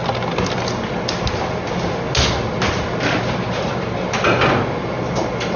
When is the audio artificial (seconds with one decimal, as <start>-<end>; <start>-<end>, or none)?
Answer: none